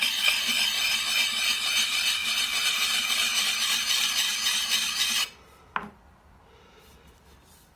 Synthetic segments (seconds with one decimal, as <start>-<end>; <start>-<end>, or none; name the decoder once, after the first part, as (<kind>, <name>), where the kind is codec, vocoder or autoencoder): none